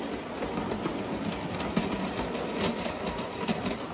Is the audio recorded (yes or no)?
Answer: yes